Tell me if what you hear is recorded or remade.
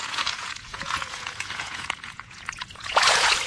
remade